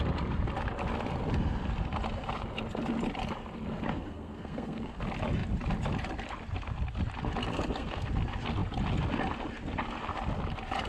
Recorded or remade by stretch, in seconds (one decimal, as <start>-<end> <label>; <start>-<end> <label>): 0.0-3.9 recorded; 3.9-5.0 remade; 5.0-7.5 recorded; 7.5-8.1 remade; 8.1-10.9 recorded